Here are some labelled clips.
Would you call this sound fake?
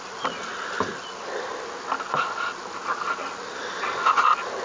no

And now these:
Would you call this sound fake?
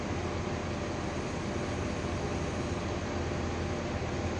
no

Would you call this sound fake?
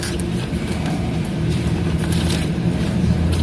yes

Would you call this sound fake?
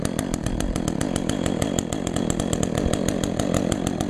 no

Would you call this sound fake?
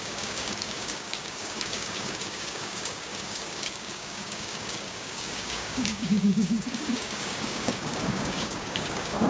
yes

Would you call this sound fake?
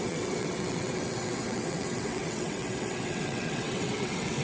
yes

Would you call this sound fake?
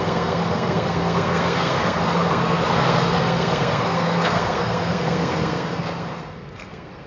yes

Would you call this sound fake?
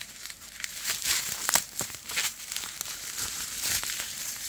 yes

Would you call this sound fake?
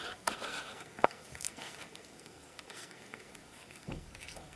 yes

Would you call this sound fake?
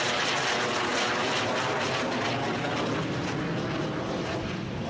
no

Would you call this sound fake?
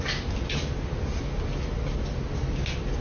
no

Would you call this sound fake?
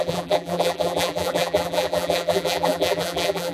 yes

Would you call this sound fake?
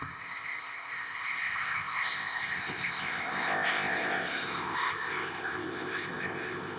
yes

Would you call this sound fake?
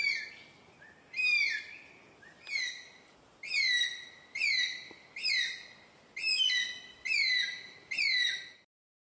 no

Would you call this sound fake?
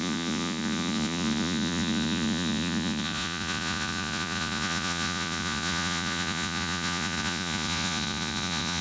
yes